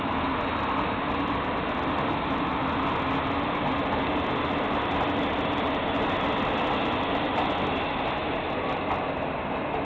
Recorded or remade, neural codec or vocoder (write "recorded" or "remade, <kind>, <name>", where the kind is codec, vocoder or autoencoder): recorded